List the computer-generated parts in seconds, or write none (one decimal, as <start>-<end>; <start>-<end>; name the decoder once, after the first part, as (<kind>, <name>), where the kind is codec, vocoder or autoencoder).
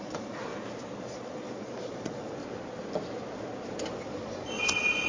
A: 0.0-0.5 (vocoder, Vocos); 1.0-2.4; 4.0-5.1